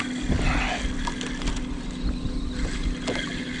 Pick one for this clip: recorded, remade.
recorded